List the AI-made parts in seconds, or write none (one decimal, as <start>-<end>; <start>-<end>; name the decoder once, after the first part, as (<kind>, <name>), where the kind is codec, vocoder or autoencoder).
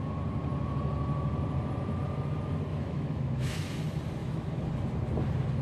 2.7-3.8 (autoencoder, DAC-VAE); 4.2-4.7